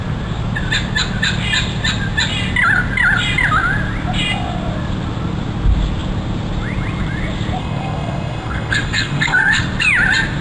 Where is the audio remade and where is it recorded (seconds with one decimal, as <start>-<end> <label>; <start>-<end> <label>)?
0.0-7.6 recorded; 7.6-9.6 remade; 9.6-10.4 recorded